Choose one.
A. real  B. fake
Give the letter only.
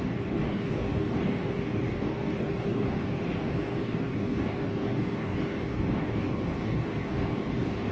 B